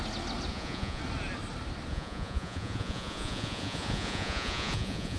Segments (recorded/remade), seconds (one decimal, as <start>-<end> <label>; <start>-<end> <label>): 0.0-0.5 recorded; 0.5-1.0 remade; 1.0-1.9 recorded; 1.9-5.2 remade